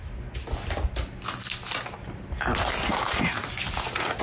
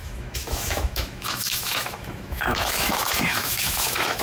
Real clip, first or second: first